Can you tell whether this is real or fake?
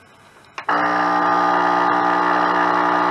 real